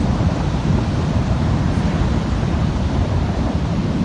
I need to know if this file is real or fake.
real